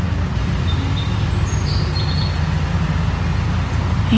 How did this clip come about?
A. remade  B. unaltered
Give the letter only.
B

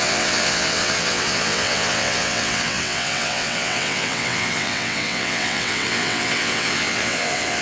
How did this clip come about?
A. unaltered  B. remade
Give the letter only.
B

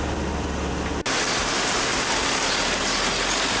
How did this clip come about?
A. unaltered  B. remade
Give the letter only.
A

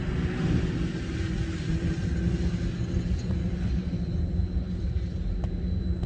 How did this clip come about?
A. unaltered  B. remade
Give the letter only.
A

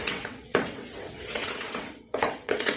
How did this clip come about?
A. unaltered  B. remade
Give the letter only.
B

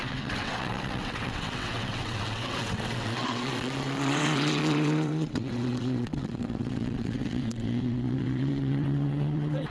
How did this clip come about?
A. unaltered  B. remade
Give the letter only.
B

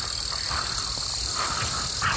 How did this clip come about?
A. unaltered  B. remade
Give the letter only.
A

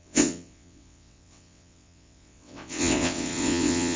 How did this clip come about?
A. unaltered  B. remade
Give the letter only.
B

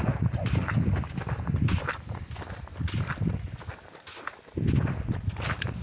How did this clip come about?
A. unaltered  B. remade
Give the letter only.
A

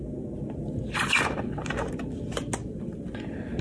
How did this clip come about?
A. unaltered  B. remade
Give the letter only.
A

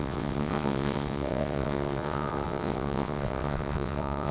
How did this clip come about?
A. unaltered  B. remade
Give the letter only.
B